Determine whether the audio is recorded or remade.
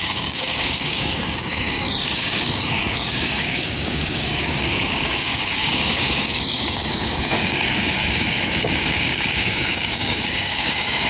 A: remade